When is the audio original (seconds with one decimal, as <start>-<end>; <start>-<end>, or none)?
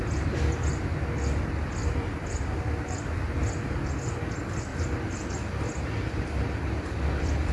0.0-1.8; 3.1-4.7